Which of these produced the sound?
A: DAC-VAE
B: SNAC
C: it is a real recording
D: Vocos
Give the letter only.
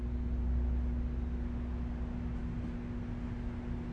C